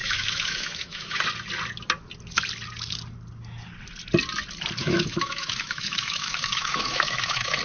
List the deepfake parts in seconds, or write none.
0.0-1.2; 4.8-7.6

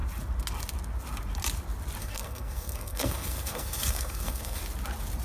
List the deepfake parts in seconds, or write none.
2.0-4.6